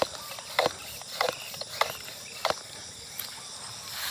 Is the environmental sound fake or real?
real